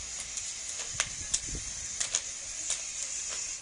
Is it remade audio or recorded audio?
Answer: recorded